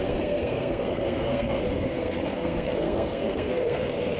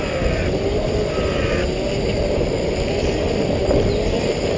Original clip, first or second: second